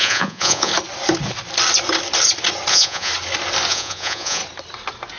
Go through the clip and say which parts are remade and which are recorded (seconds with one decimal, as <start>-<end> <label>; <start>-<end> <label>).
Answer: 0.0-0.7 remade; 0.7-2.7 recorded; 2.7-3.1 remade; 3.1-3.7 recorded; 3.7-4.4 remade; 4.4-5.2 recorded